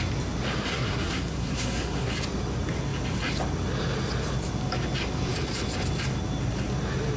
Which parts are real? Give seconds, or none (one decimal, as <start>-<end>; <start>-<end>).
0.0-0.7; 2.1-7.2